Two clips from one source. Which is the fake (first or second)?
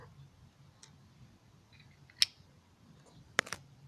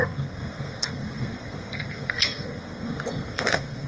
second